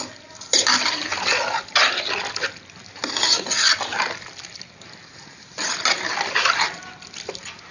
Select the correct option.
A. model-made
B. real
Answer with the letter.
B